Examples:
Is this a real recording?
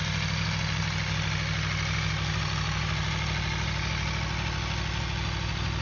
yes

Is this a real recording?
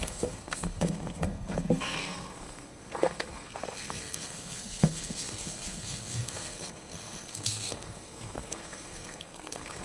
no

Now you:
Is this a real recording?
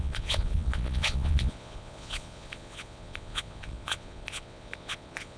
no